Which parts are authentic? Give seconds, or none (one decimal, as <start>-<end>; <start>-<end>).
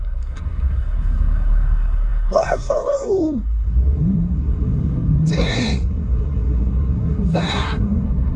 none